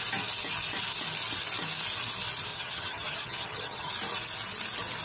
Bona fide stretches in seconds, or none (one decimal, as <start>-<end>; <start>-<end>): 0.0-2.5; 3.9-5.0

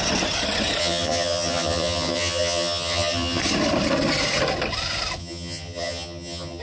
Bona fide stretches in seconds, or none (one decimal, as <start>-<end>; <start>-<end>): 0.0-0.8; 3.4-5.2

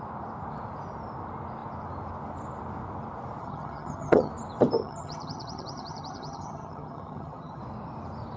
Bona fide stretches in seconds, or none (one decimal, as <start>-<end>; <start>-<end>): 0.0-3.4; 4.3-4.8; 7.6-8.4

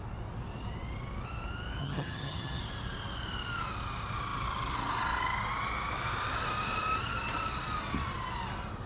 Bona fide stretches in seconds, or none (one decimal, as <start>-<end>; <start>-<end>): 0.0-1.8; 2.6-8.9

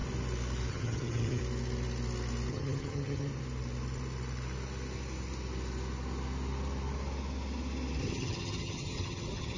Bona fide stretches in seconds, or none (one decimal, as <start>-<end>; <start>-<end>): 0.0-0.7; 1.4-2.5; 3.3-8.0

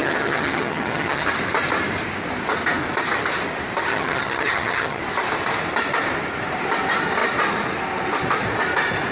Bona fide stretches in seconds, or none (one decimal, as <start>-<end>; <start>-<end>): 1.3-3.9; 5.0-9.1

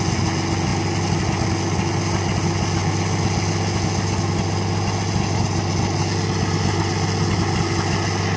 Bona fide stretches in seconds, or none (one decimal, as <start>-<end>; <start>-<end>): 0.0-8.4

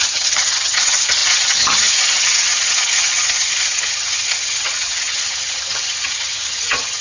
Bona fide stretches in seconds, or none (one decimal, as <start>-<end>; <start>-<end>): none